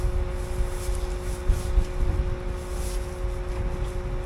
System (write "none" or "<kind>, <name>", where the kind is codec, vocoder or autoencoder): none